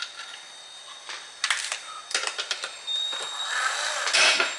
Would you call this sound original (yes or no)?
yes